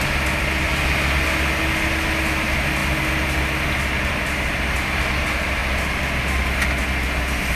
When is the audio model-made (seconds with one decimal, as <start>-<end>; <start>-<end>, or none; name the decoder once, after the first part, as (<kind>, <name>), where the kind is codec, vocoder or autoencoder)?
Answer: none